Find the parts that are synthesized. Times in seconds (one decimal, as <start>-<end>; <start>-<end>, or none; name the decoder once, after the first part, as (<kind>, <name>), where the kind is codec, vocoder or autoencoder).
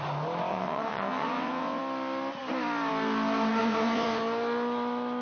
0.5-1.8 (vocoder, WaveNeXt); 3.6-4.2